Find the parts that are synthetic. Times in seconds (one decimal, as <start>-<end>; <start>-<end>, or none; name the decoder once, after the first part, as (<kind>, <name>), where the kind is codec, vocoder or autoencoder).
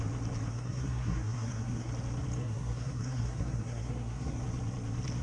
0.5-1.9 (codec, SNAC); 2.4-4.4